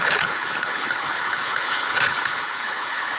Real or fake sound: fake